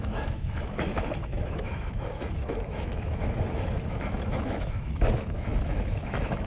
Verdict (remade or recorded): remade